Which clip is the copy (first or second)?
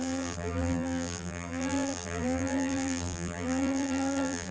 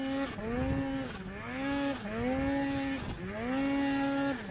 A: first